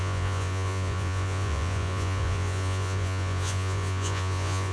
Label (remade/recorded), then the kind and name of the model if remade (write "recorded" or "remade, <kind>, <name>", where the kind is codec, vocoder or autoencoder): remade, vocoder, Vocos